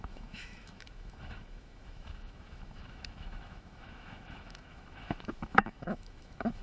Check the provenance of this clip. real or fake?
fake